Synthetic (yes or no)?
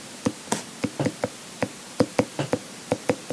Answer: no